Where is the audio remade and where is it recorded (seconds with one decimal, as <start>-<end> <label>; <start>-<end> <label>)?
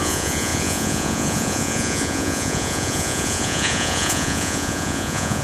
0.0-5.4 remade